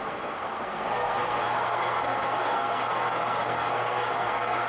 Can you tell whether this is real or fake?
fake